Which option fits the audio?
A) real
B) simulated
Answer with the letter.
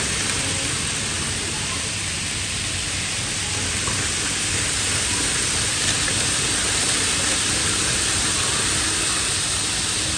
A